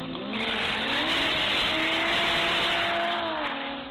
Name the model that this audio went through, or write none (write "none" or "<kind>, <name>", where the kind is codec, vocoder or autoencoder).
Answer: none